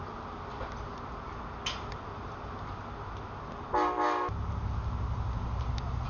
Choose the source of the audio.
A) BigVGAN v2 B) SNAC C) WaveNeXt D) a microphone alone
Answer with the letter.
D